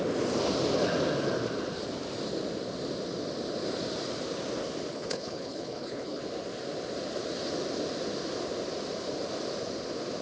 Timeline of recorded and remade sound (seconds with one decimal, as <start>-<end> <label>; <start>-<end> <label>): 0.0-4.9 recorded; 4.9-6.2 remade; 6.2-10.2 recorded